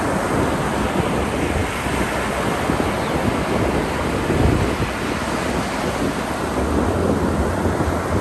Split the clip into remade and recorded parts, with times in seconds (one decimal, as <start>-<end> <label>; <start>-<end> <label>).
0.0-8.2 recorded

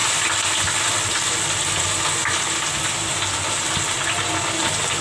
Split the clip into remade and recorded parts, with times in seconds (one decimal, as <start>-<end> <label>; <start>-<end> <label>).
0.0-5.0 recorded